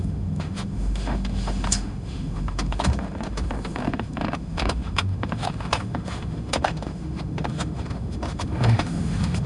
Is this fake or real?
fake